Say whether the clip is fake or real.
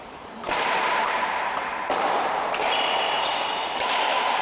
fake